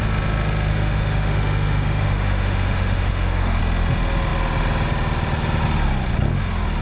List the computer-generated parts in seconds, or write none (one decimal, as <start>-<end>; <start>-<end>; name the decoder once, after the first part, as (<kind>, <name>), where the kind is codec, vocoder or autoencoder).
0.7-3.6 (autoencoder, DAC-VAE)